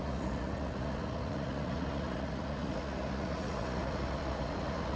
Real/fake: fake